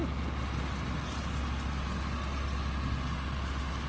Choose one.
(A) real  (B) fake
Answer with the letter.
A